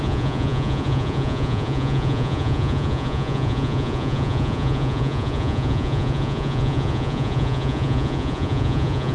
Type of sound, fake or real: fake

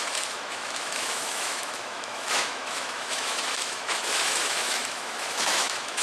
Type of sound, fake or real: fake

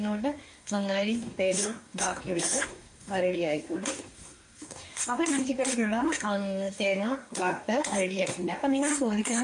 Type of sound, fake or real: fake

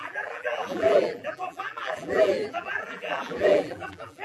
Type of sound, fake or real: fake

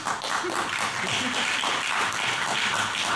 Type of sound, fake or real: real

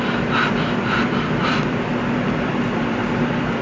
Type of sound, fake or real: fake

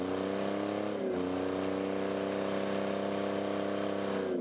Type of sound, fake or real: real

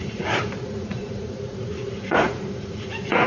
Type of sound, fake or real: fake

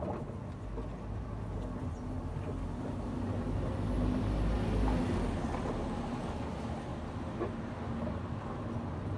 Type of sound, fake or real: real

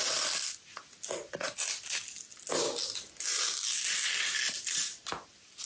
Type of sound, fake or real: real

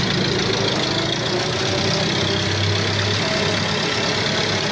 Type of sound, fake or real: real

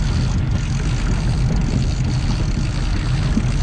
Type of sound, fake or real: real